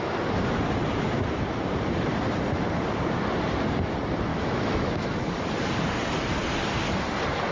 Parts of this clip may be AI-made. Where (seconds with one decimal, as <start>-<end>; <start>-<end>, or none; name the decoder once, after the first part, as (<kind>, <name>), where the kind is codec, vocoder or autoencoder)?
4.3-5.3 (autoencoder, DAC-VAE)